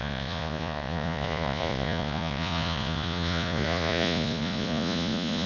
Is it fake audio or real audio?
fake